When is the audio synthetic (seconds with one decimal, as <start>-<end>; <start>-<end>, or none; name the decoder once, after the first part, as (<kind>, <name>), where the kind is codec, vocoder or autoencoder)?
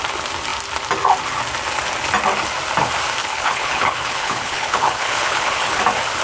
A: 3.2-5.8 (codec, HILCodec)